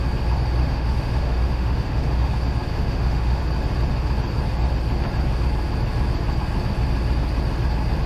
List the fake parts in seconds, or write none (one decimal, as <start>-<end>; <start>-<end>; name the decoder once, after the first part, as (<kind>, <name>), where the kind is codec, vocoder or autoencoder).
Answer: 0.6-2.3 (autoencoder, DAC-VAE); 2.7-3.4